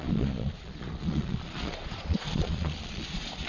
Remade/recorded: remade